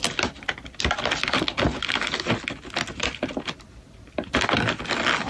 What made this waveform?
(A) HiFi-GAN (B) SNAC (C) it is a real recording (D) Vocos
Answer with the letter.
C